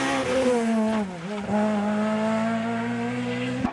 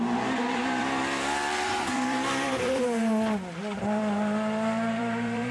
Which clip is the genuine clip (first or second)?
first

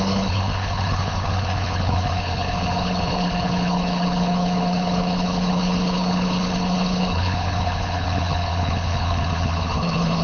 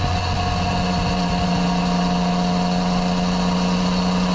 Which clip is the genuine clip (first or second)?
second